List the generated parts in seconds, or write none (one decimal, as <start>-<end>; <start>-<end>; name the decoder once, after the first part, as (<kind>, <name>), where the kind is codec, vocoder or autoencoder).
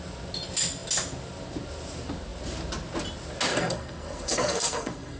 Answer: 3.5-5.2 (codec, SNAC)